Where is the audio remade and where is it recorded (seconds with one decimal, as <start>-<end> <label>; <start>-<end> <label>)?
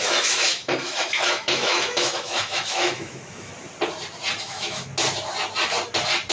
0.0-3.5 remade; 3.5-4.4 recorded; 4.4-4.9 remade; 4.9-6.3 recorded